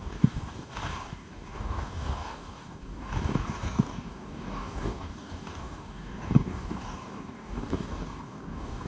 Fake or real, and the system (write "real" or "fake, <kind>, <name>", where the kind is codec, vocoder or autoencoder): fake, codec, DAC